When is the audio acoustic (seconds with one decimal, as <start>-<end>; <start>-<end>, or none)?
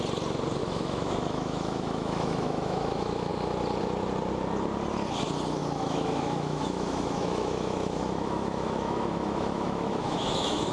0.0-0.6; 3.3-5.6